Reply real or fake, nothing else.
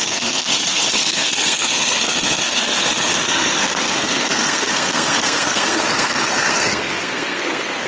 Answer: fake